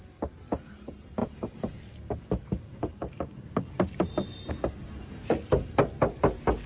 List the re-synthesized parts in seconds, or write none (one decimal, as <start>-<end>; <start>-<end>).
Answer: none